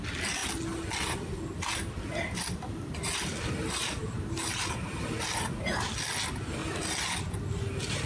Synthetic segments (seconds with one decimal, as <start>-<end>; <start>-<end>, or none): 6.6-7.2